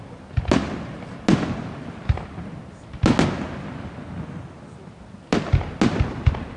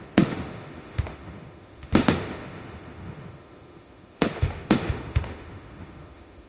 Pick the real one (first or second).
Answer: first